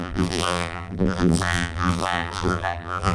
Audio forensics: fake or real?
fake